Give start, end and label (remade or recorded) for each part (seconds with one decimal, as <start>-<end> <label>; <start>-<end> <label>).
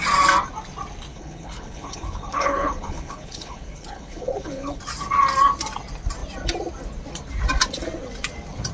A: 0.0-1.1 recorded; 1.1-4.8 remade; 4.8-8.7 recorded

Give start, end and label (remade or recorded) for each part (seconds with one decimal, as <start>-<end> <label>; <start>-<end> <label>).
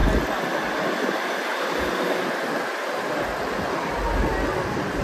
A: 0.0-0.5 recorded; 0.5-1.5 remade; 1.5-4.5 recorded; 4.5-5.0 remade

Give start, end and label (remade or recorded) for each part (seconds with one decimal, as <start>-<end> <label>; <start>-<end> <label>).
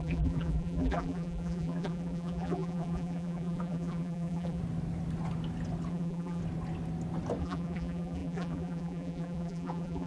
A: 0.0-4.6 remade; 4.6-5.9 recorded; 5.9-6.4 remade; 6.4-7.4 recorded; 7.4-10.1 remade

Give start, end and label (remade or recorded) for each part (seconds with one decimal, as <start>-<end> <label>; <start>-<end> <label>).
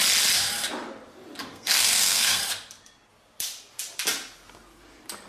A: 0.0-1.5 recorded; 1.5-2.4 remade; 2.4-5.3 recorded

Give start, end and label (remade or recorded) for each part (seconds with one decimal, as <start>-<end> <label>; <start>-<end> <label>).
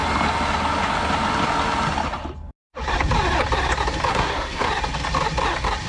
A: 0.0-4.1 recorded; 4.1-4.7 remade; 4.7-5.9 recorded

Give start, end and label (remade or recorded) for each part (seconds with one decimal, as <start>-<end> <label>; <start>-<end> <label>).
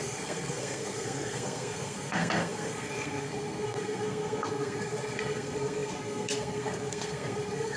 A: 0.0-7.8 remade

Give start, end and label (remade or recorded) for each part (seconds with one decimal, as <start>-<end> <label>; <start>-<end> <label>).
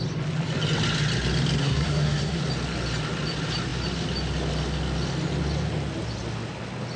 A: 0.0-1.6 recorded; 1.6-2.4 remade; 2.4-7.0 recorded